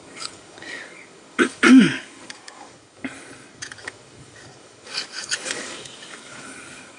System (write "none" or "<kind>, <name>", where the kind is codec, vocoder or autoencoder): codec, DAC